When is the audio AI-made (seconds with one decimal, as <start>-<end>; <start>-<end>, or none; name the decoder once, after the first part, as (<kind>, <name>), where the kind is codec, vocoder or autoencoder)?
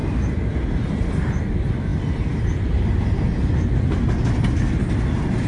none